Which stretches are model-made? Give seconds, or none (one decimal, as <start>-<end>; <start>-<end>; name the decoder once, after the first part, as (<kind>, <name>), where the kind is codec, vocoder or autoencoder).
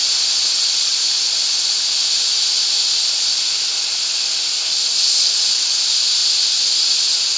none